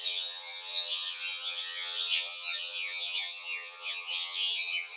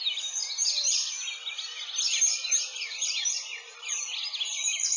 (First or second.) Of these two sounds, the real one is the second